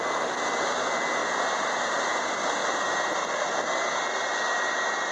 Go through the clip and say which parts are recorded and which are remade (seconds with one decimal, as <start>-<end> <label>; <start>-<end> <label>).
0.0-1.2 recorded; 1.2-2.1 remade; 2.1-2.6 recorded; 2.6-5.1 remade